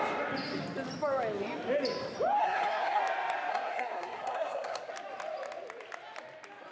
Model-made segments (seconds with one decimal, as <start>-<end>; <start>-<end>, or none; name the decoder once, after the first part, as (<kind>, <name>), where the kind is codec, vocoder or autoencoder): 2.4-3.0 (codec, SNAC); 3.5-4.9